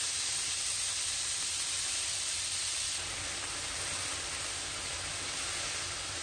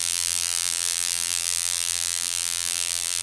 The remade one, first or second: second